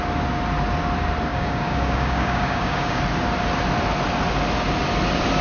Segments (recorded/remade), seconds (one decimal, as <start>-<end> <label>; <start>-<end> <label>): 0.0-1.3 recorded; 1.3-3.0 remade; 3.0-5.4 recorded